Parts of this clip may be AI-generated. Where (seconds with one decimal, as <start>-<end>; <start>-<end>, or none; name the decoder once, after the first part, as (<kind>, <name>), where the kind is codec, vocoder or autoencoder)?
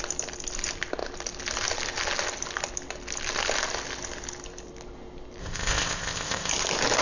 5.4-6.5 (codec, ZipCodec)